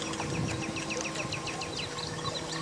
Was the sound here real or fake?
real